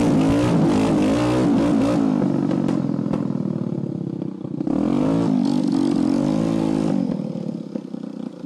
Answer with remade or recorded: recorded